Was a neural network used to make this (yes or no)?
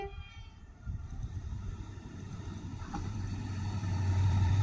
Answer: yes